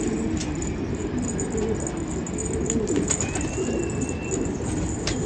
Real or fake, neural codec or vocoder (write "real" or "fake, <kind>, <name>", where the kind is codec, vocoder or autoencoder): real